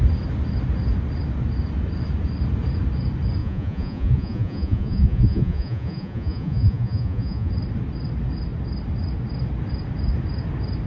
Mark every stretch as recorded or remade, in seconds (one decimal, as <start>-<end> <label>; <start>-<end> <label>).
0.0-3.4 recorded; 3.4-7.5 remade; 7.5-10.9 recorded